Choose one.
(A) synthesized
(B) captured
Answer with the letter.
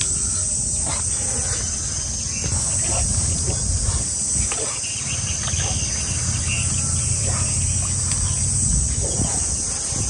B